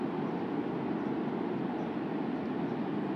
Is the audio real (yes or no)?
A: yes